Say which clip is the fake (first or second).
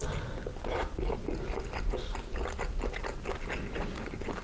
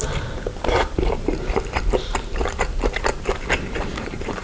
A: second